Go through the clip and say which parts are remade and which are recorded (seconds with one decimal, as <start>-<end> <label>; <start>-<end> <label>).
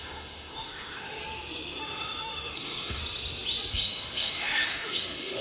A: 0.0-1.2 remade; 1.2-1.8 recorded; 1.8-3.0 remade; 3.0-3.7 recorded; 3.7-5.4 remade